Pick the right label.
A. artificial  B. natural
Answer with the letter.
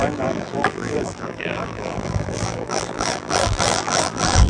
A